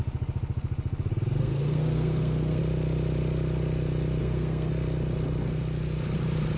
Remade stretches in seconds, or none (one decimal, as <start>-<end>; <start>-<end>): 1.4-2.6; 4.2-4.7